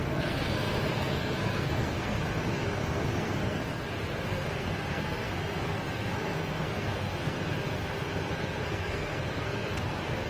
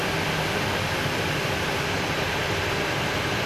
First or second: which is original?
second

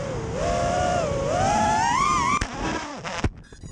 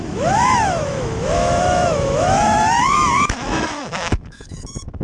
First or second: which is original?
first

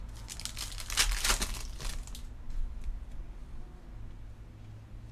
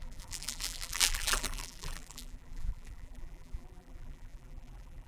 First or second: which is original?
first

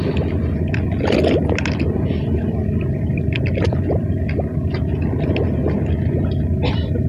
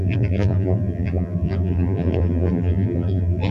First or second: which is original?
first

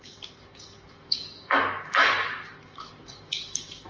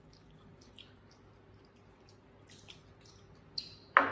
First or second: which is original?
second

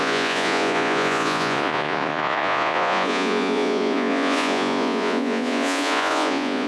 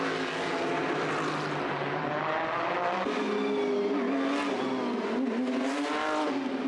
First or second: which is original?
second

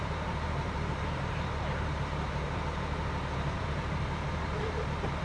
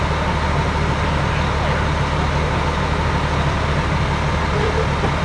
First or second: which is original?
second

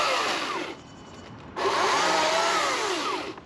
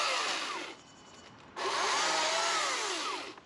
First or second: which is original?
second